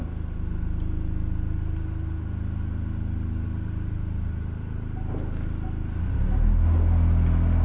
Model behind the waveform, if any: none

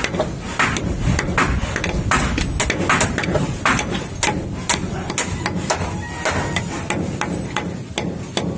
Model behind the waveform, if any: none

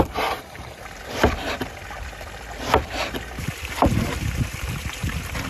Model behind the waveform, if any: none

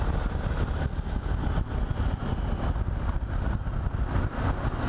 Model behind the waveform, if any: none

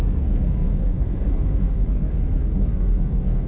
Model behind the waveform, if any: codec, SNAC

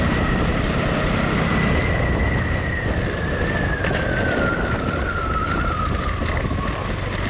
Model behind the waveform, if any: none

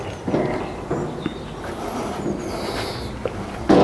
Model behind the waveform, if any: none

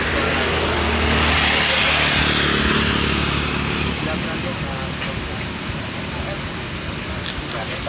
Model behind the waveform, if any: none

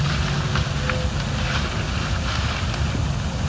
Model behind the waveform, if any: none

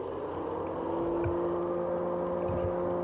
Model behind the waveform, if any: none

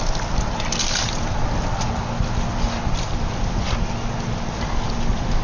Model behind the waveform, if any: none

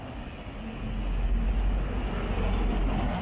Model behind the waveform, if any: none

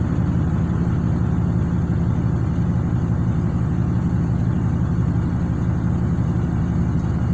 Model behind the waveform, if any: none